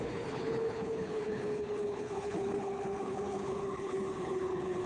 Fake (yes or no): yes